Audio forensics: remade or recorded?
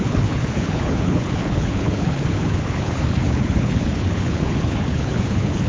remade